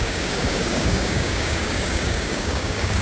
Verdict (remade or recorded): remade